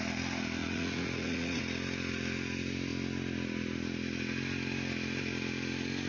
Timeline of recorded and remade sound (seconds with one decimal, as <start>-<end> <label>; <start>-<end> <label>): 0.0-0.6 recorded; 0.6-1.6 remade; 1.6-6.1 recorded